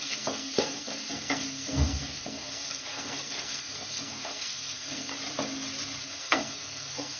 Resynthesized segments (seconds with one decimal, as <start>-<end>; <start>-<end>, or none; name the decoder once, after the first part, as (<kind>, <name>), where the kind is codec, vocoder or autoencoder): 0.0-5.1 (codec, SNAC); 6.0-7.2